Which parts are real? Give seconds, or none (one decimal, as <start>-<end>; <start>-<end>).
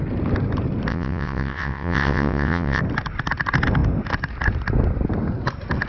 0.0-0.9; 2.8-5.9